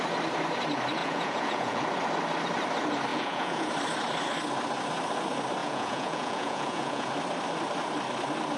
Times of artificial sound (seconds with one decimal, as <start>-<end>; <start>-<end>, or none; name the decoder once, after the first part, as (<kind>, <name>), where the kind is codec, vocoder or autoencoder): 1.0-1.8 (vocoder, Vocos); 3.1-3.7; 5.6-7.1